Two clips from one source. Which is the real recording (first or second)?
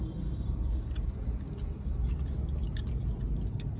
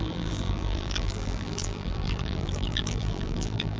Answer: first